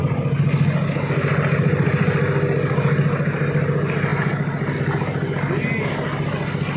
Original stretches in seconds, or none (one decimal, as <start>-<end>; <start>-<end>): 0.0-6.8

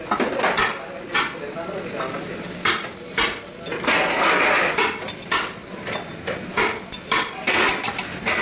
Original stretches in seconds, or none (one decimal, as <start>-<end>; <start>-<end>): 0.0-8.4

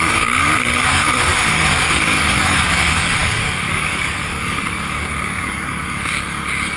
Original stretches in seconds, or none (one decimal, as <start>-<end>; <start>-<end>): none

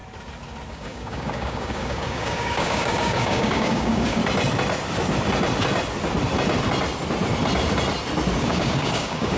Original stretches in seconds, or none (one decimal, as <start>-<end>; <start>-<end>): 0.0-0.7; 4.2-8.4

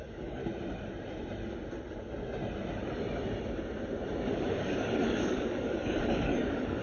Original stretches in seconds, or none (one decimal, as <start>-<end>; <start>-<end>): 0.4-4.3

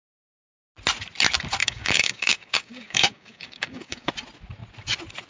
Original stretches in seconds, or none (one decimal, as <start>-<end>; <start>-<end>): 0.0-1.6; 4.1-5.3